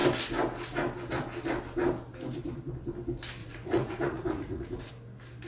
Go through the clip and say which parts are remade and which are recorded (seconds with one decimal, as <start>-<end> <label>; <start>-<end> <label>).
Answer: 0.0-3.4 recorded; 3.4-4.9 remade; 4.9-5.5 recorded

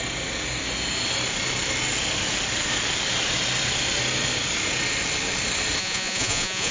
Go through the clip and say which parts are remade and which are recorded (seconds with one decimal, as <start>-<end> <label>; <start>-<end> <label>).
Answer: 0.0-5.8 recorded; 5.8-6.7 remade

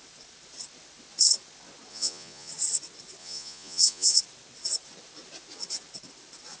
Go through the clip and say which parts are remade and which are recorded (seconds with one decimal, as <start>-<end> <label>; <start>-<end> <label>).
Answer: 0.0-1.9 recorded; 1.9-2.5 remade; 2.5-3.2 recorded; 3.2-4.2 remade; 4.2-6.6 recorded

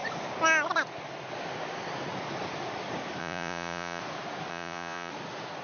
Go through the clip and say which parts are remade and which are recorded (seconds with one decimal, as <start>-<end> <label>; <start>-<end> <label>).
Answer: 0.0-3.2 recorded; 3.2-4.0 remade; 4.0-4.5 recorded; 4.5-5.1 remade; 5.1-5.6 recorded

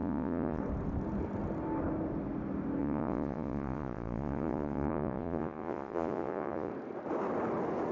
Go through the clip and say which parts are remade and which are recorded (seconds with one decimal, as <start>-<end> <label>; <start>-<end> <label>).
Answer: 0.0-0.6 remade; 0.6-2.8 recorded; 2.8-6.7 remade; 6.7-7.9 recorded

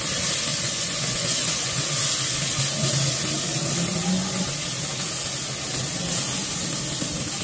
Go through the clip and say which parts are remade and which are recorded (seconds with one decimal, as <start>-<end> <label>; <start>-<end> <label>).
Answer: 0.0-0.5 recorded; 0.5-1.8 remade; 1.8-7.4 recorded

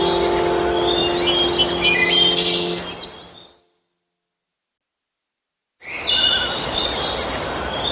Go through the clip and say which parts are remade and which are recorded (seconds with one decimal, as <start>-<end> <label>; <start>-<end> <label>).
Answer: 0.0-7.9 recorded

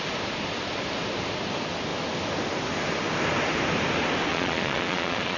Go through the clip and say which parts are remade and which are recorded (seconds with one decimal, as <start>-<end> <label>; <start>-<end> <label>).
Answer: 0.0-4.3 recorded; 4.3-5.4 remade